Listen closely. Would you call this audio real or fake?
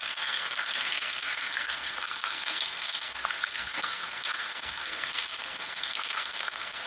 fake